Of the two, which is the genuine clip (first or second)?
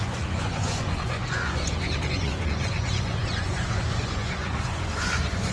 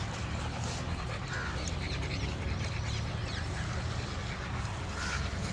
second